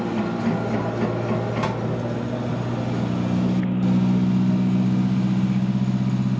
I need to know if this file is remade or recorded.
recorded